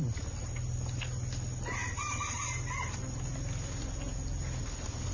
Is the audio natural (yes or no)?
yes